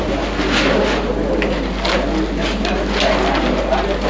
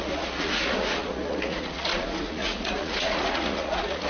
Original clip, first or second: first